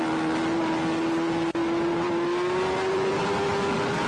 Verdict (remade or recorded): recorded